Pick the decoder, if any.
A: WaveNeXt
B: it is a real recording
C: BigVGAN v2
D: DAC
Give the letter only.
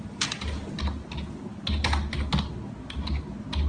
B